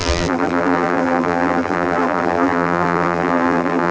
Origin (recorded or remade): remade